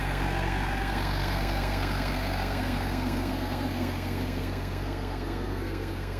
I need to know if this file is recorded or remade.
remade